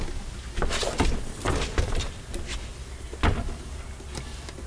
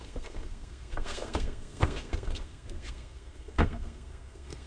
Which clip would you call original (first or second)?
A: first